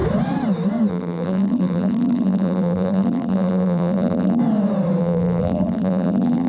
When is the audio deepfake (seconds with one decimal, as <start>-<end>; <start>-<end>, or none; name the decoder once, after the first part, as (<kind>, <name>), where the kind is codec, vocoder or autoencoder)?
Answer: 0.9-4.4 (vocoder, BigVGAN v2); 5.0-6.5